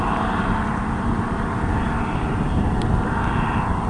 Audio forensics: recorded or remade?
remade